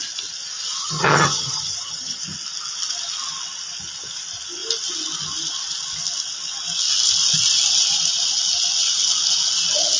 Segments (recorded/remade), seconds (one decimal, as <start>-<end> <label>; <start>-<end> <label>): 0.0-0.8 recorded; 0.8-2.2 remade; 2.2-10.0 recorded